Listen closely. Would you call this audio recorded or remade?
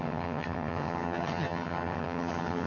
remade